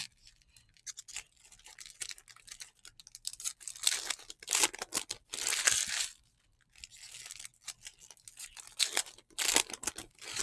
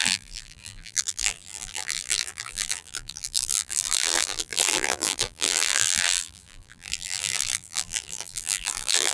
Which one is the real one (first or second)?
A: first